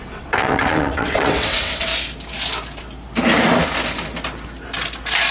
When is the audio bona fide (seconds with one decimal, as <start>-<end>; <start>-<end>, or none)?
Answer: 1.9-5.3